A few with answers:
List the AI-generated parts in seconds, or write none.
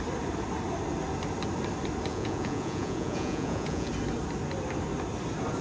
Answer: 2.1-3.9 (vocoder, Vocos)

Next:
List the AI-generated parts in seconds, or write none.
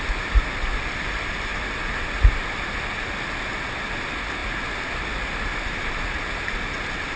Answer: none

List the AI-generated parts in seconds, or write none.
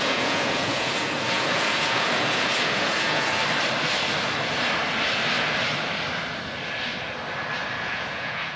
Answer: 0.0-3.4 (vocoder, Vocos); 7.8-8.6